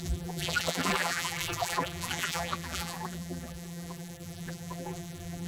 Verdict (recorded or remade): remade